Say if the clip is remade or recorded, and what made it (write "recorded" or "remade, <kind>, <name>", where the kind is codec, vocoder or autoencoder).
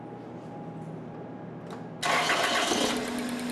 recorded